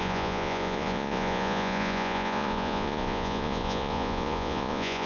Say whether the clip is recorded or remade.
remade